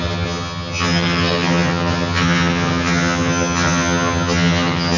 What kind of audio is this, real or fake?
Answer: fake